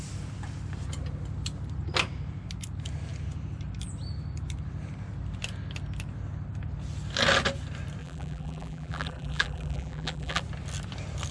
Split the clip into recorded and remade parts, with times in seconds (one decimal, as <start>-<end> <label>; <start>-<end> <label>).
0.0-8.0 recorded; 8.0-10.4 remade; 10.4-11.3 recorded